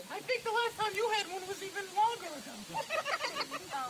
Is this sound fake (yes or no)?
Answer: yes